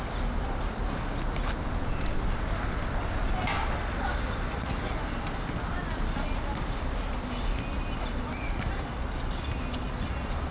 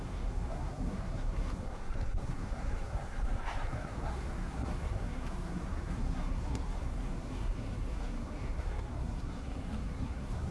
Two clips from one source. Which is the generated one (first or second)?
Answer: second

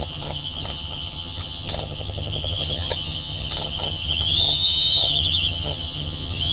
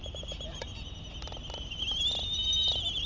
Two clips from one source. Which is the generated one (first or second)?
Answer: first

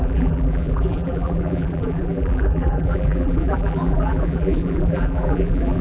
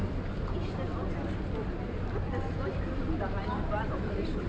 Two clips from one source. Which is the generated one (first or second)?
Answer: first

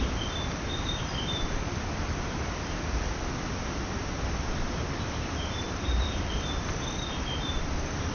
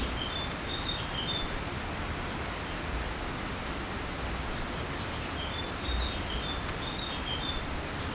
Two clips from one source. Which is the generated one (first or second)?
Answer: first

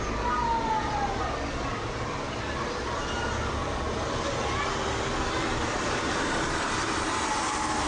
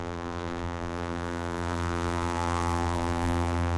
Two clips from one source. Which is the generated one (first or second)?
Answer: second